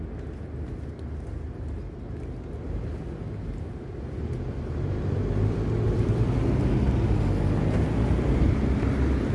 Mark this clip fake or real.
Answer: real